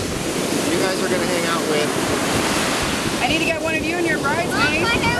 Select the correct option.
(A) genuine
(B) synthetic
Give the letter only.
A